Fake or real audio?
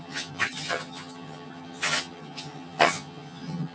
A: fake